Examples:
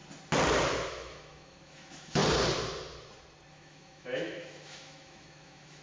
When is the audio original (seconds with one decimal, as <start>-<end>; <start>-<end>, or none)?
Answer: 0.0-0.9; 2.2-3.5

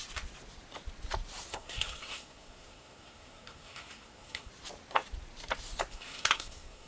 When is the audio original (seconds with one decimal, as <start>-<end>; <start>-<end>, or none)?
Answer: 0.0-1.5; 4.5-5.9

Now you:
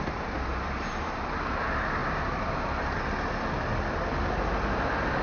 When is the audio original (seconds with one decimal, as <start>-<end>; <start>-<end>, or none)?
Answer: 0.0-0.5; 1.3-2.0; 2.5-5.2

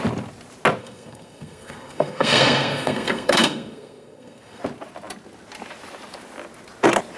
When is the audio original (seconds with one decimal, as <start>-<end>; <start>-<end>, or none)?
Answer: 0.0-0.8; 4.6-7.2

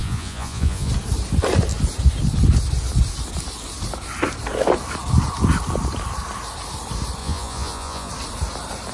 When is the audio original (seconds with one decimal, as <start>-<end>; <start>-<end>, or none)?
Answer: 0.9-7.2; 8.1-8.9